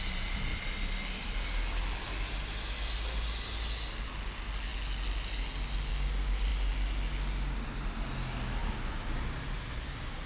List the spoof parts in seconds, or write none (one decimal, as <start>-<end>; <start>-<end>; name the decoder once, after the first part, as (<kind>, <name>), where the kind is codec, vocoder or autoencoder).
0.5-2.3 (vocoder, BigVGAN v2)